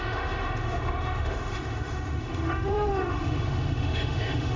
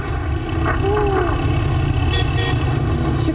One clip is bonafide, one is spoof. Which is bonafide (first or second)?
second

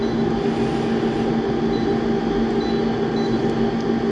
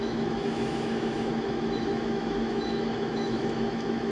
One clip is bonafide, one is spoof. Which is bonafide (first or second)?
first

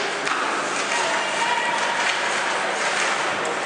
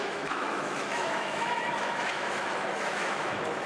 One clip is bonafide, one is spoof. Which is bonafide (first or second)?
first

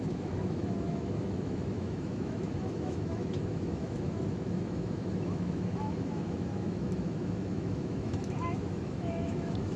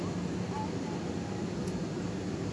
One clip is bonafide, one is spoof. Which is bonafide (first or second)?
second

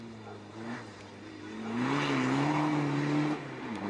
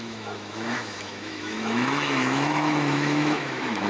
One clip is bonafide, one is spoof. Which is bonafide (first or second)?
first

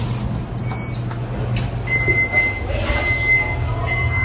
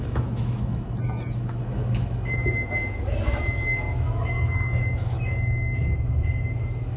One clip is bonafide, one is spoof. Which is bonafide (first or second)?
first